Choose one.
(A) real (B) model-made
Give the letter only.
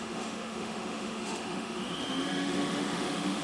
B